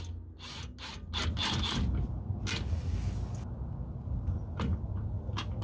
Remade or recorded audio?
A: recorded